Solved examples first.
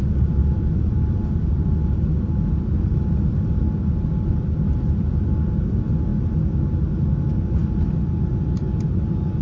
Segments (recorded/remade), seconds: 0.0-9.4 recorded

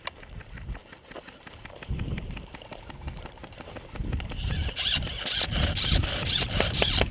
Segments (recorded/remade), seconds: 0.0-0.8 recorded; 0.8-5.1 remade; 5.1-7.1 recorded